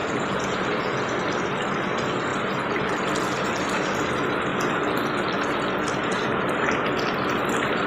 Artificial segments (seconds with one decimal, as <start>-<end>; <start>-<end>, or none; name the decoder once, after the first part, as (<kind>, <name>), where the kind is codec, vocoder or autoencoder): 0.0-1.1 (vocoder, Vocos)